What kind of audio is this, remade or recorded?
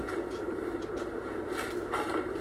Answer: remade